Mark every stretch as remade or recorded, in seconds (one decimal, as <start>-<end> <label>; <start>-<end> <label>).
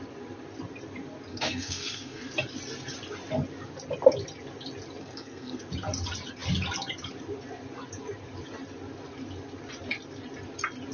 0.0-1.3 recorded; 1.3-2.3 remade; 2.3-5.0 recorded; 5.0-5.6 remade; 5.6-10.9 recorded